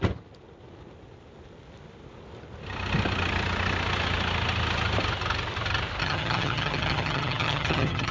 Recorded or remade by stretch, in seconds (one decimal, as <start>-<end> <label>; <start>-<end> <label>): 0.0-6.0 recorded; 6.0-8.1 remade